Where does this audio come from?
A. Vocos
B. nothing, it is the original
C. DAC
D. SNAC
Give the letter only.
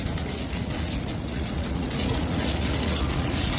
A